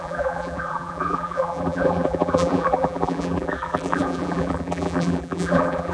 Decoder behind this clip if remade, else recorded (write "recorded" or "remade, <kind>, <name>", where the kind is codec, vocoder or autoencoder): remade, vocoder, BigVGAN v2